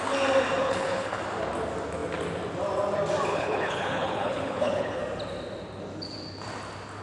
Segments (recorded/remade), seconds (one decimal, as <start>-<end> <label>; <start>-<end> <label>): 0.0-0.6 recorded; 0.6-1.2 remade; 1.2-3.3 recorded; 3.3-5.0 remade; 5.0-7.0 recorded